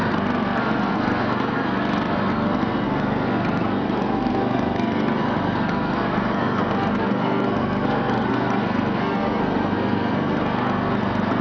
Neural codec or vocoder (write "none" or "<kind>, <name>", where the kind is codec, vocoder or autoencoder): codec, SNAC